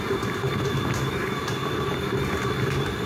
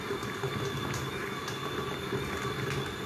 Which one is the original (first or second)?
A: second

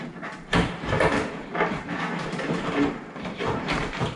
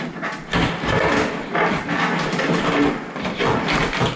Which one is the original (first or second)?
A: second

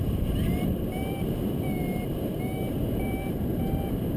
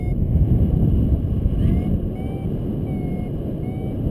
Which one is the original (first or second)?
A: second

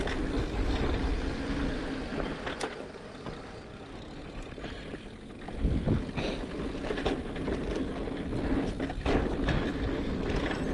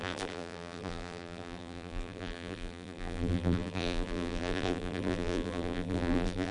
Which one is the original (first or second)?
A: first